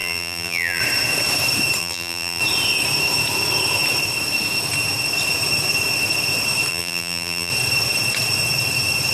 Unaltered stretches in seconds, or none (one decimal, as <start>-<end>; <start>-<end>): 0.8-1.8; 2.4-6.7; 7.5-9.1